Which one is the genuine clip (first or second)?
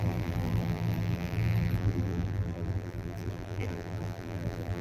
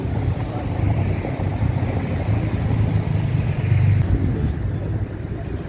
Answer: second